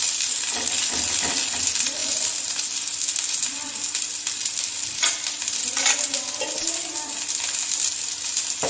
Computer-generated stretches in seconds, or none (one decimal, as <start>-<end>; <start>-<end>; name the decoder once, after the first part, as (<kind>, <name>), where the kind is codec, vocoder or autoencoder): none